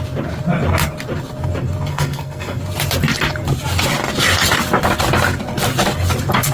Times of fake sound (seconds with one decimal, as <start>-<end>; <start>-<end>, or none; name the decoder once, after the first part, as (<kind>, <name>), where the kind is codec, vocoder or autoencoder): 1.9-2.6 (codec, SNAC)

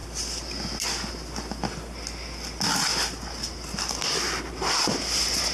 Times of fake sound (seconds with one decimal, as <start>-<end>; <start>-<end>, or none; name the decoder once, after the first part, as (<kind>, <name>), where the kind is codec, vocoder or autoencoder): none

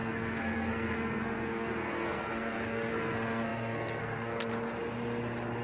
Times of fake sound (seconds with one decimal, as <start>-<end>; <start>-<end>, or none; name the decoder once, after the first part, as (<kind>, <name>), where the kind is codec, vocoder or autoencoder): 0.0-4.5 (codec, SNAC)

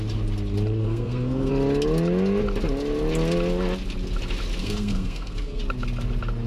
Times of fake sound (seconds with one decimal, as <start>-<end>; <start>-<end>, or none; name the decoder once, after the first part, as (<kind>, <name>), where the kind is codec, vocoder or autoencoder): 0.8-1.5 (codec, SNAC); 4.6-5.6

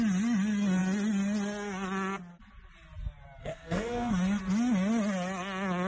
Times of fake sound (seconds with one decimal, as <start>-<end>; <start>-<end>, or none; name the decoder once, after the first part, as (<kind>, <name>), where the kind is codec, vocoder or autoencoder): 3.4-4.1 (codec, SNAC)

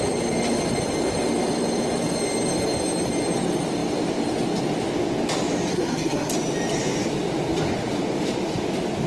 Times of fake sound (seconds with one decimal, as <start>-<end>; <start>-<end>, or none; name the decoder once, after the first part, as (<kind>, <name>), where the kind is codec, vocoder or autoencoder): 5.7-6.3 (codec, SNAC)

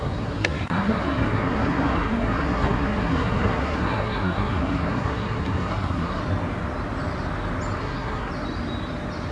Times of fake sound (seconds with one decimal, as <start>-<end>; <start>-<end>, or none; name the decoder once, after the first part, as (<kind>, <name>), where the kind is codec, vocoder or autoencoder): 0.0-6.2 (codec, SNAC); 7.8-8.3